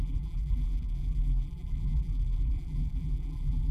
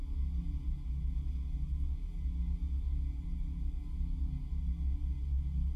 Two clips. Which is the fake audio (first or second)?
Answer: first